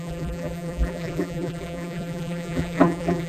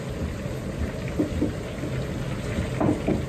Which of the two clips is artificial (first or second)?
first